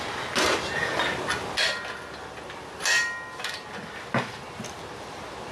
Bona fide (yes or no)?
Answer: yes